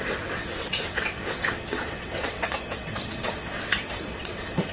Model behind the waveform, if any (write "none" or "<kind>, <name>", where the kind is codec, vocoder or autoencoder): vocoder, WaveNeXt